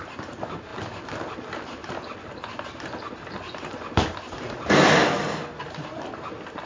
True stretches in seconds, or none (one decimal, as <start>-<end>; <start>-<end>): 0.0-6.7